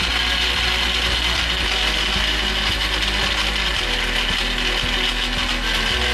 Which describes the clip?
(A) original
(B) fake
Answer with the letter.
A